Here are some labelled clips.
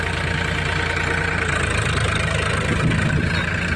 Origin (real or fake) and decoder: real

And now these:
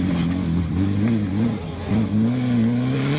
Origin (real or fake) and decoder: real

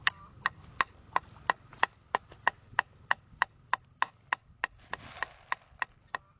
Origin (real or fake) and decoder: real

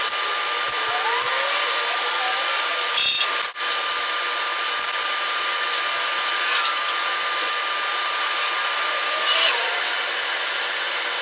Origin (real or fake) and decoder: real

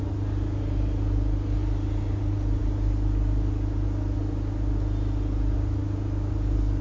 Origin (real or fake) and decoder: real